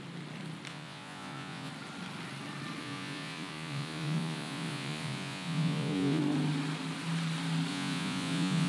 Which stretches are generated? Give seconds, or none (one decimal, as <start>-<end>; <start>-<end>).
0.7-1.7; 2.8-6.2; 7.7-8.7